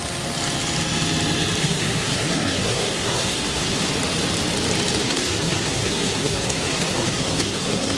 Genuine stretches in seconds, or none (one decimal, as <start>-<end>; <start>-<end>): 0.0-1.6; 3.9-5.0